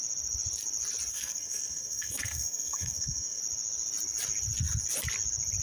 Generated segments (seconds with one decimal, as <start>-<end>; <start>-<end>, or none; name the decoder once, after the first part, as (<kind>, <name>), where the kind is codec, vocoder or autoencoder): 1.1-3.4 (codec, SNAC)